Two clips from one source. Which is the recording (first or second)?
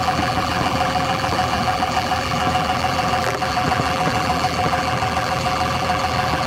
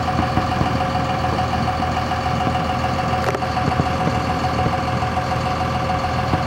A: second